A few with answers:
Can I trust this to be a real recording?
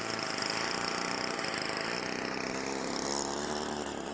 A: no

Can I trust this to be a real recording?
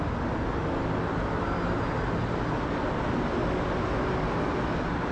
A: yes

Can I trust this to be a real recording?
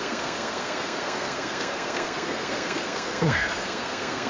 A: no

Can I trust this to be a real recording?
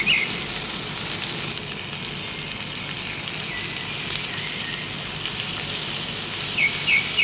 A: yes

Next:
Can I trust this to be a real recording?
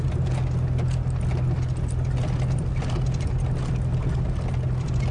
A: yes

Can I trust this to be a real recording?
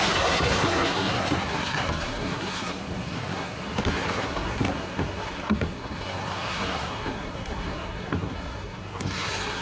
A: no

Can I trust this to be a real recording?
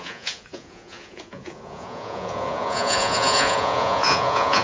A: no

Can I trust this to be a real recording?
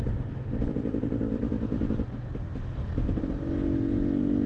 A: yes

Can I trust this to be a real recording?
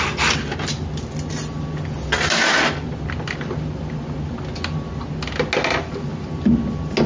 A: yes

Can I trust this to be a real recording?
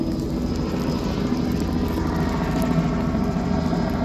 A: yes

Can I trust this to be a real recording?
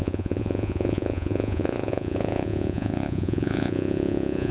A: no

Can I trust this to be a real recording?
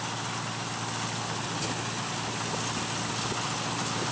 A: yes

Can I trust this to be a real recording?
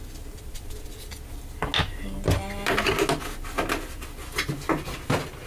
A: yes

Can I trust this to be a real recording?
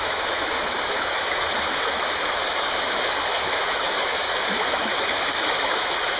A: no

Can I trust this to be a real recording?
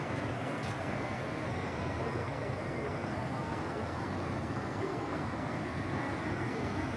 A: no